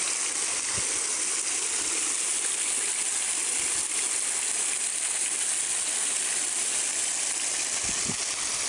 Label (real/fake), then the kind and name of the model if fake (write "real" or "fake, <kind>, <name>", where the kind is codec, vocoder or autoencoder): real